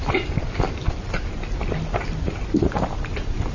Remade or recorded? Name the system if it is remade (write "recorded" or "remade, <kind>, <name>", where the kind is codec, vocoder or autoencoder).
recorded